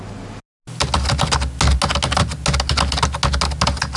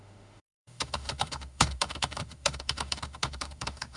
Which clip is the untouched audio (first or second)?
first